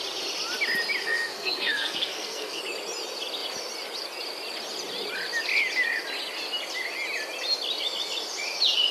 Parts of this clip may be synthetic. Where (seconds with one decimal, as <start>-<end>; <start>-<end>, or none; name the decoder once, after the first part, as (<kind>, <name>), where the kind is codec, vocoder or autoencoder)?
1.0-2.6 (codec, SNAC)